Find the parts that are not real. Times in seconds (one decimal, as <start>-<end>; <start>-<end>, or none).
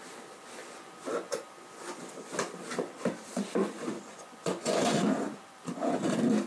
0.6-2.1; 3.6-6.0